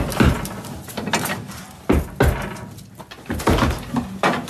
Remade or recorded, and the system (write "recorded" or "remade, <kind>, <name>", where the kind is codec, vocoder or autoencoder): recorded